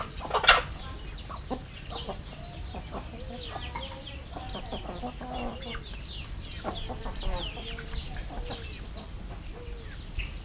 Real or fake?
real